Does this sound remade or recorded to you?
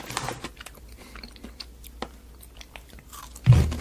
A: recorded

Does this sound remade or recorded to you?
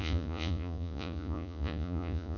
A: remade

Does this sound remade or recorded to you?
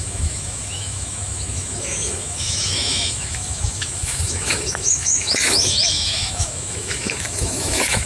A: remade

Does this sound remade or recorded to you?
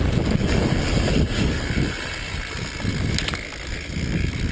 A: recorded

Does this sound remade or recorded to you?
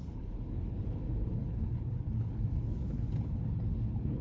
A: remade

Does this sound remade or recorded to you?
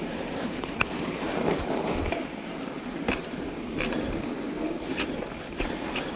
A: remade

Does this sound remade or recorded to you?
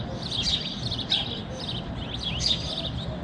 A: recorded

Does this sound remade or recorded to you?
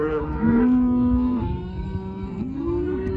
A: remade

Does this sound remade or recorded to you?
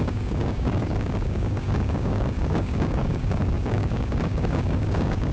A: remade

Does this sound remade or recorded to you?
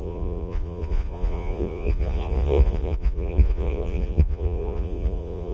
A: remade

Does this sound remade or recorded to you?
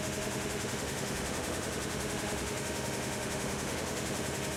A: remade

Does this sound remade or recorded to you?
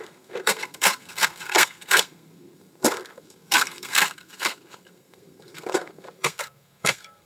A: remade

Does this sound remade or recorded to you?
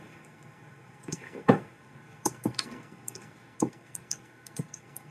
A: remade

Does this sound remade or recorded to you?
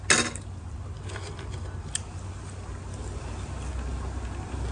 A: recorded